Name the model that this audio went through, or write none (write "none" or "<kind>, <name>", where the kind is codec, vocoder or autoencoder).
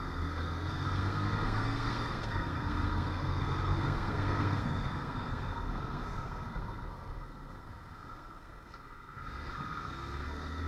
codec, SNAC